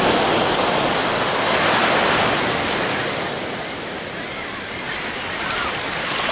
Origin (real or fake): real